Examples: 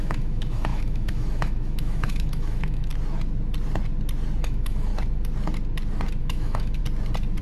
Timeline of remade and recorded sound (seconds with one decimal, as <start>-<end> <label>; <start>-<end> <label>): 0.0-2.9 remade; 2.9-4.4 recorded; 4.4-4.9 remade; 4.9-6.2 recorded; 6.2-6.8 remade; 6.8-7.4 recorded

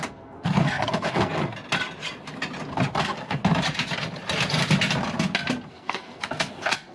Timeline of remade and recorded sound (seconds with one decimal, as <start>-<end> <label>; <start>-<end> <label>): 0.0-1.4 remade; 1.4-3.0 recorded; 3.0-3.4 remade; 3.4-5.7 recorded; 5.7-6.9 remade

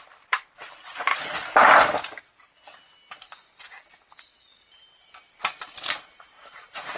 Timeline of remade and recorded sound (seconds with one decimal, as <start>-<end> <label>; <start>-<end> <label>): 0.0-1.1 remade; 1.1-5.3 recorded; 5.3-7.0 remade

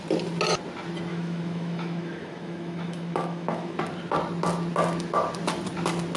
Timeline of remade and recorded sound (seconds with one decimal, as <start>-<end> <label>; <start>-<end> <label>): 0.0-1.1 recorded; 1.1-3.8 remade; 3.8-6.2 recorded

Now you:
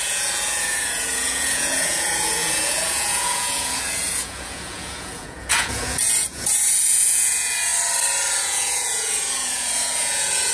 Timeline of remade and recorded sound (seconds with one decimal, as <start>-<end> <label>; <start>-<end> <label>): 0.0-7.7 remade; 7.7-8.4 recorded; 8.4-10.5 remade

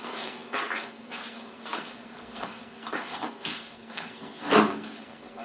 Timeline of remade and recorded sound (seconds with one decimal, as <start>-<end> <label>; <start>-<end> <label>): 0.0-5.4 remade

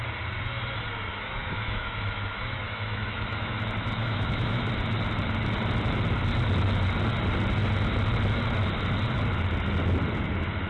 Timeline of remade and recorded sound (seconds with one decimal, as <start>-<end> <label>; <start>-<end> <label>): 0.0-1.1 recorded; 1.1-3.6 remade; 3.6-4.0 recorded; 4.0-4.7 remade; 4.7-10.7 recorded